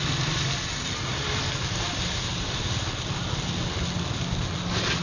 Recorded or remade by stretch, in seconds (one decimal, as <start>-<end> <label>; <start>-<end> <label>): 0.0-5.0 recorded